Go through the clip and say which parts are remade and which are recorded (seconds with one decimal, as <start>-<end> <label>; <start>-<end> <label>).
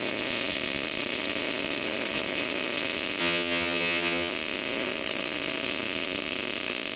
0.0-3.2 recorded; 3.2-4.3 remade; 4.3-7.0 recorded